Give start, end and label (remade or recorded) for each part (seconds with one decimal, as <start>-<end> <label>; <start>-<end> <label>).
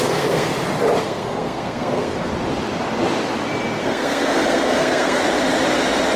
0.0-0.5 remade; 0.5-1.0 recorded; 1.0-2.3 remade; 2.3-3.8 recorded; 3.8-5.2 remade; 5.2-6.2 recorded